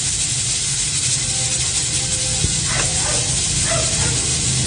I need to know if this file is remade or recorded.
recorded